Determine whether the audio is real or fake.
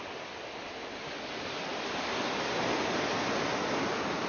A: real